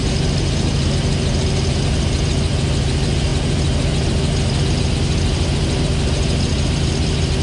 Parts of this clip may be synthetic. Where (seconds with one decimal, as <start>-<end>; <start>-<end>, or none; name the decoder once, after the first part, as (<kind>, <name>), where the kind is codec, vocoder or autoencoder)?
none